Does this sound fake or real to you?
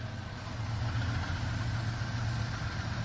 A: real